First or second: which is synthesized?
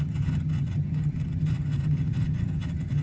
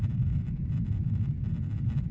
first